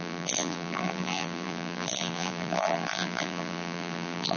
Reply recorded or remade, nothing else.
remade